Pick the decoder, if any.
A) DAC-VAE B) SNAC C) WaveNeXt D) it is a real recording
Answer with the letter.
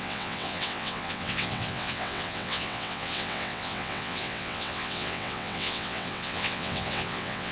C